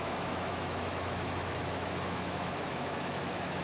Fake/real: fake